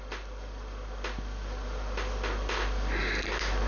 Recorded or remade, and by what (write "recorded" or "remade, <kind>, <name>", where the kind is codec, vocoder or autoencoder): recorded